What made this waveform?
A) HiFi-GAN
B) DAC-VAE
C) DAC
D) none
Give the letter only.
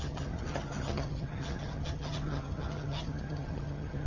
A